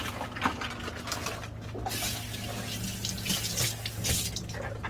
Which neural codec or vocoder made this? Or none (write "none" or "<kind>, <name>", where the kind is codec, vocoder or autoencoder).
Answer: none